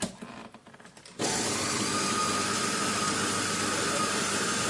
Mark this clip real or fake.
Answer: real